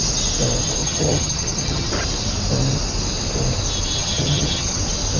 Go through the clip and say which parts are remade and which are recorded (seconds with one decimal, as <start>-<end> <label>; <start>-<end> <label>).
0.0-0.8 recorded; 0.8-1.9 remade; 1.9-4.0 recorded; 4.0-4.8 remade; 4.8-5.2 recorded